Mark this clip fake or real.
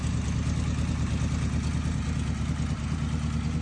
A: real